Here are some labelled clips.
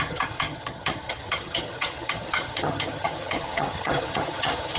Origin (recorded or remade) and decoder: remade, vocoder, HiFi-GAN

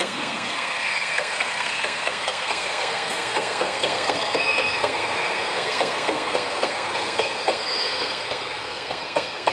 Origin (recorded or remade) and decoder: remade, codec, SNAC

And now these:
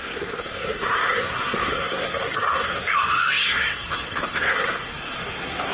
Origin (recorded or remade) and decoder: remade, codec, SNAC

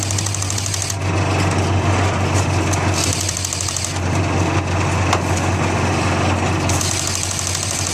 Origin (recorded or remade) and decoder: recorded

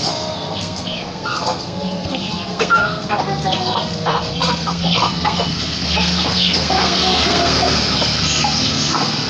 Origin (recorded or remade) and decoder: remade, codec, SNAC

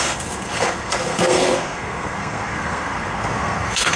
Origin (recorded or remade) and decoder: remade, codec, SNAC